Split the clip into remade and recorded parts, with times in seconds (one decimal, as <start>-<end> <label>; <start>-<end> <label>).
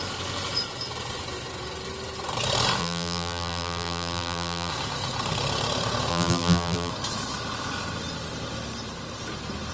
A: 0.0-2.8 recorded; 2.8-4.7 remade; 4.7-6.1 recorded; 6.1-6.9 remade; 6.9-9.7 recorded